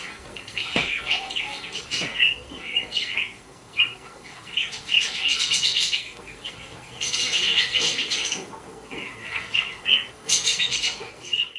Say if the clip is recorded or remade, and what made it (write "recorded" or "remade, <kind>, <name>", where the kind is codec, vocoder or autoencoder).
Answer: remade, codec, SNAC